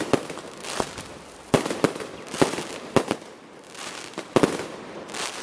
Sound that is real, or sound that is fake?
fake